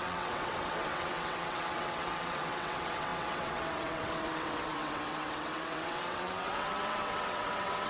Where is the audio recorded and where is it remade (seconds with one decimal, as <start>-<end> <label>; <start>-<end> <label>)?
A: 0.0-7.9 remade